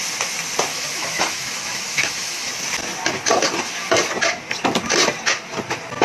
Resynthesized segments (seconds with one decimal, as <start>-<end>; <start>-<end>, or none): 0.7-2.5